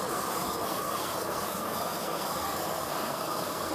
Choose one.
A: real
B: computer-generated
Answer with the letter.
B